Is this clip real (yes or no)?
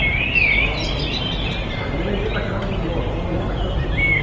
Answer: yes